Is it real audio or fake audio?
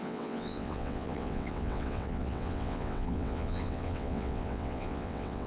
fake